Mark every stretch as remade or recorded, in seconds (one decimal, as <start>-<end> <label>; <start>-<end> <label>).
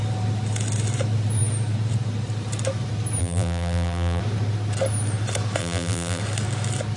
0.0-3.2 recorded; 3.2-4.2 remade; 4.2-5.6 recorded; 5.6-6.2 remade; 6.2-7.0 recorded